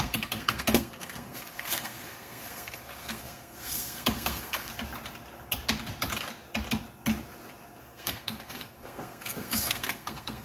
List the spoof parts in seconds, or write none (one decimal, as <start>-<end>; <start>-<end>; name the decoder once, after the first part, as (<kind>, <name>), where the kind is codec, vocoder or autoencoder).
0.0-4.7 (codec, SNAC); 7.8-10.4